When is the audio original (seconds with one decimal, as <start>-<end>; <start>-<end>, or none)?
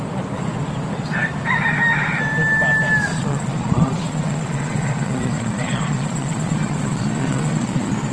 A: 0.0-3.1